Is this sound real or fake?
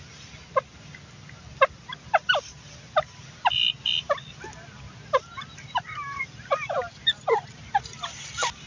real